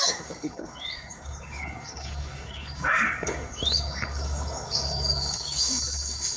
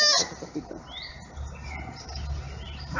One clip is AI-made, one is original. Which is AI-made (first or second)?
first